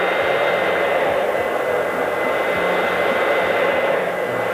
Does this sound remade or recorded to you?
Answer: recorded